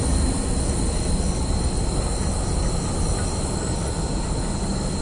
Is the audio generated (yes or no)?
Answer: no